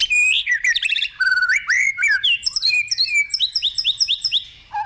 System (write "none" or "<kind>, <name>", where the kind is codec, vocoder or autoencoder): vocoder, BigVGAN v2